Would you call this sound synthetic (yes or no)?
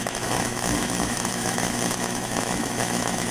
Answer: yes